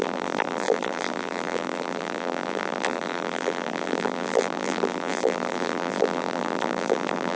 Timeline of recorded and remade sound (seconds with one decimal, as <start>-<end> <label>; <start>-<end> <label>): 0.0-7.4 remade